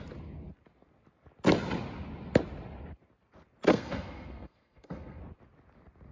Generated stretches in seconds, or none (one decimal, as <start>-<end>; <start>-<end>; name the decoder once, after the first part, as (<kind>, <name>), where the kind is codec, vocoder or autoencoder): 3.7-5.2 (codec, SNAC)